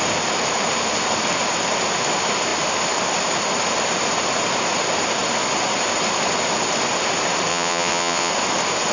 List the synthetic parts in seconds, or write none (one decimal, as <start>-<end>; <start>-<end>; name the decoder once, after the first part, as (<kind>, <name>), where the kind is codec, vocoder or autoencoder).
7.5-8.3 (vocoder, WaveNeXt)